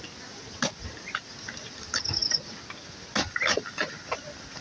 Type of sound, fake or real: real